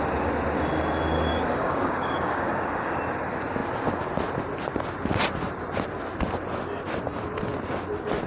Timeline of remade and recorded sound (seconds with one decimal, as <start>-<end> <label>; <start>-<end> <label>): 0.0-1.3 recorded; 1.3-3.0 remade; 3.0-8.3 recorded